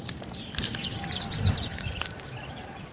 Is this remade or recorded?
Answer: remade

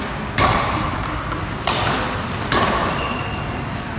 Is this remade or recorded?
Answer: remade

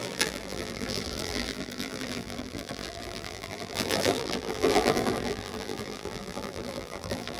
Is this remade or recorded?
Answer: remade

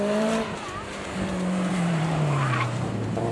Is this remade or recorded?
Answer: remade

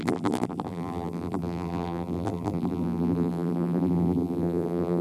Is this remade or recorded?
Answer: remade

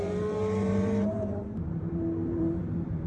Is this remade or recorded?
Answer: remade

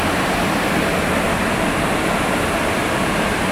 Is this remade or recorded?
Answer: recorded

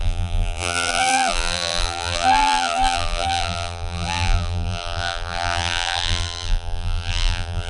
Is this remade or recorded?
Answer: remade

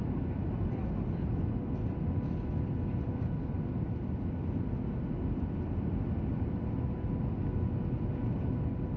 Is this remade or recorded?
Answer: recorded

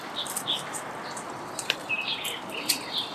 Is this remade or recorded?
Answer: remade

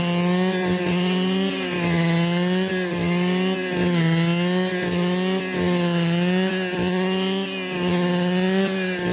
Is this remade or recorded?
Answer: recorded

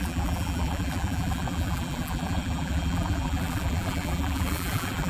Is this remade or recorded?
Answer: remade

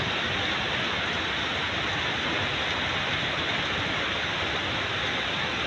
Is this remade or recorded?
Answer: recorded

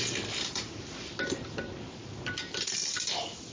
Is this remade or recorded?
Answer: recorded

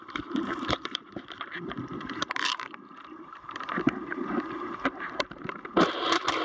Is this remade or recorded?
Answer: remade